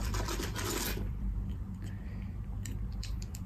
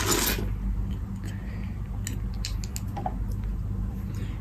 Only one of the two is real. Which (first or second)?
second